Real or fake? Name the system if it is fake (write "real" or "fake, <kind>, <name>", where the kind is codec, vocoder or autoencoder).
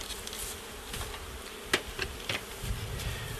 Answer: real